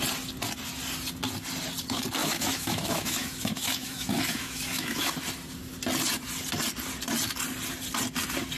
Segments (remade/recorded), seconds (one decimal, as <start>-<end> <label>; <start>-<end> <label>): 0.0-2.2 recorded; 2.2-5.1 remade; 5.1-8.6 recorded